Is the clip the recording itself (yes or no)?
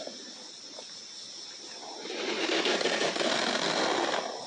yes